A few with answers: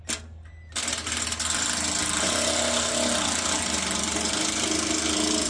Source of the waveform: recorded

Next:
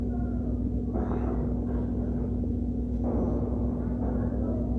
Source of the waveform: recorded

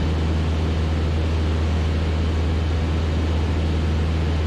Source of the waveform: recorded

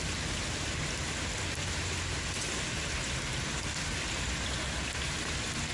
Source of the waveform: recorded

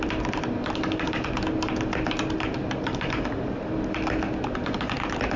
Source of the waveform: recorded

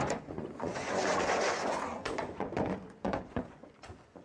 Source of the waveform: remade